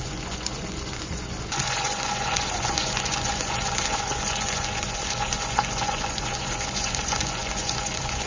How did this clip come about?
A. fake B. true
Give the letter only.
A